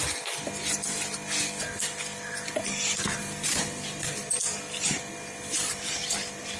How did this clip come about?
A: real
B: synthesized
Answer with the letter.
A